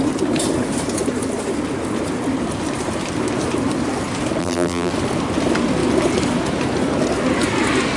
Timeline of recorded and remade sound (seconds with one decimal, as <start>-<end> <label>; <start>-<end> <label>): 0.0-4.4 recorded; 4.4-4.9 remade; 4.9-8.0 recorded